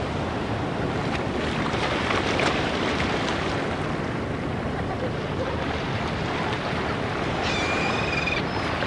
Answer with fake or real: fake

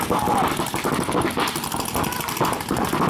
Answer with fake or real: real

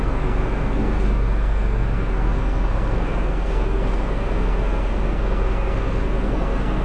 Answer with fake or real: fake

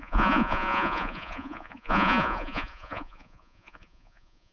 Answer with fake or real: fake